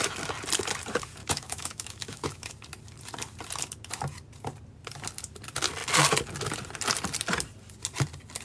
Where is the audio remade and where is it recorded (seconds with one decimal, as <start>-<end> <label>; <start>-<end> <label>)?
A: 0.0-1.2 recorded; 1.2-2.5 remade; 2.5-8.4 recorded

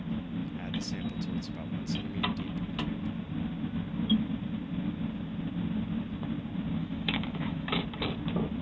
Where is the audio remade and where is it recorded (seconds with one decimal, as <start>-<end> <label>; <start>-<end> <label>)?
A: 0.0-6.8 recorded; 6.8-7.8 remade; 7.8-8.6 recorded

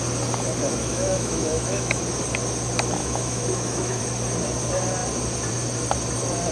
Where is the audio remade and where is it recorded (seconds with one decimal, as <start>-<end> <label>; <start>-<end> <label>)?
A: 0.0-0.9 recorded; 0.9-2.0 remade; 2.0-3.0 recorded; 3.0-4.0 remade; 4.0-6.5 recorded

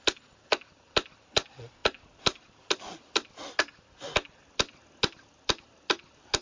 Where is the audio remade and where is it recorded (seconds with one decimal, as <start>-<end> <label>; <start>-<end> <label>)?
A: 0.0-6.4 recorded

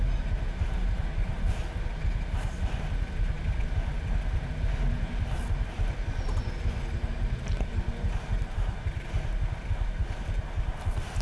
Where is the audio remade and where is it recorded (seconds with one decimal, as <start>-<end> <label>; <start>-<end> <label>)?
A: 0.0-11.2 recorded

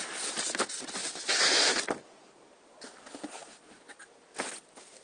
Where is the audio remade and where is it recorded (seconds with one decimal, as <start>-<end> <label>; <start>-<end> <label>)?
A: 0.0-1.0 recorded; 1.0-1.8 remade; 1.8-5.0 recorded

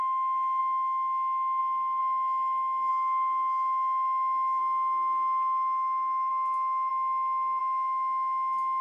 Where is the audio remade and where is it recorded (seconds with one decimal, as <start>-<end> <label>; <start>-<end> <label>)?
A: 0.0-0.6 recorded; 0.6-1.6 remade; 1.6-4.6 recorded; 4.6-6.3 remade; 6.3-8.8 recorded

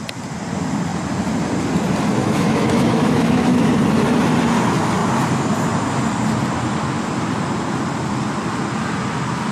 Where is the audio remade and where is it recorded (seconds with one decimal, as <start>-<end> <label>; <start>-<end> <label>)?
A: 0.0-2.2 recorded; 2.2-3.7 remade; 3.7-9.5 recorded